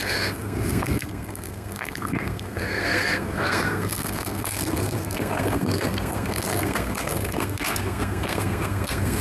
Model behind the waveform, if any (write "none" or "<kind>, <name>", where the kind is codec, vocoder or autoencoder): codec, SNAC